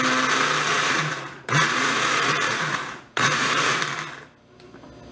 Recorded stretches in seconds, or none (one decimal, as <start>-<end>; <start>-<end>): 0.0-0.7; 3.8-5.1